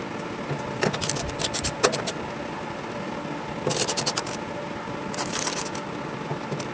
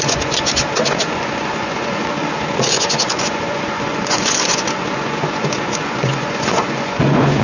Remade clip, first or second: second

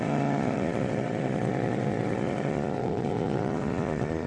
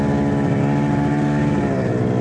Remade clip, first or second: first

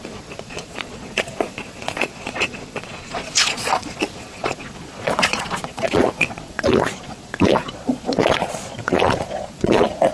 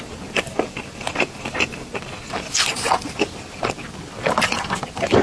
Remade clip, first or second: first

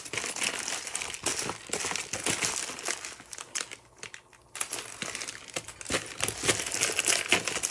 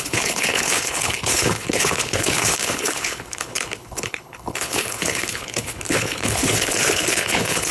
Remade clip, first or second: second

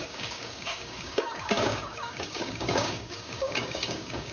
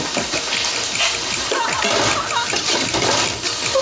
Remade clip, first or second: first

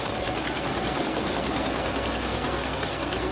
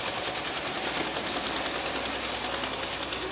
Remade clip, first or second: first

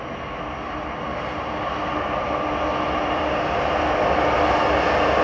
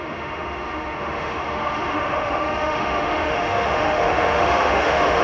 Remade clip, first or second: second